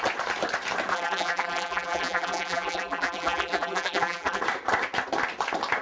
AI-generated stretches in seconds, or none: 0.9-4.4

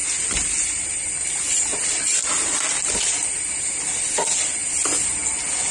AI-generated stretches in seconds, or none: none

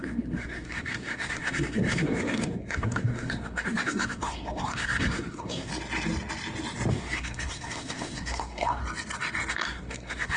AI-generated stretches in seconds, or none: 0.0-5.7; 6.9-8.8; 9.5-10.4

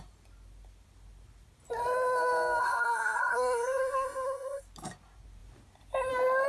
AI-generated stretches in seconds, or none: 2.6-4.6

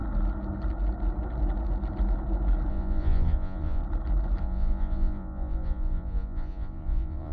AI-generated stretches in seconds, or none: 2.7-3.8; 4.4-7.3

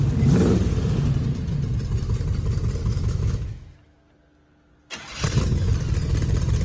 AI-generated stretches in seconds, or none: 2.8-4.1

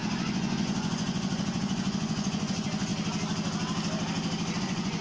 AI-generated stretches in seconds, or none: 0.0-2.9; 4.6-5.0